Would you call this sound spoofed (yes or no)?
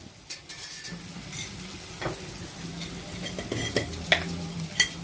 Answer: no